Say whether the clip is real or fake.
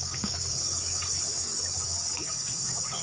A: fake